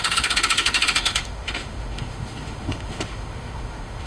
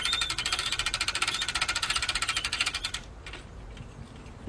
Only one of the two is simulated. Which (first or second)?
first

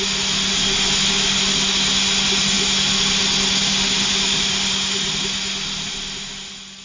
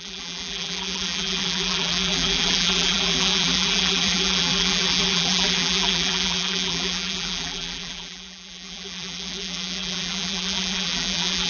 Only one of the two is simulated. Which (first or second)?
second